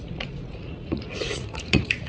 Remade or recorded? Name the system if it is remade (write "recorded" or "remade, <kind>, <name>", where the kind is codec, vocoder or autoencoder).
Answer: remade, vocoder, Vocos